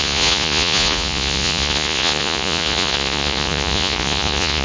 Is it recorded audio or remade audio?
remade